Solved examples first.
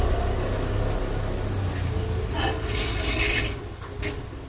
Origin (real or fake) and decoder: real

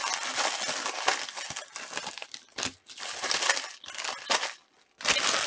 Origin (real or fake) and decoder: real